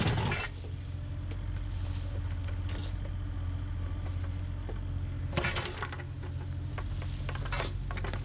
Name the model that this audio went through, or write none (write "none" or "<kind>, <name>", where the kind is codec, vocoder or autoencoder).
none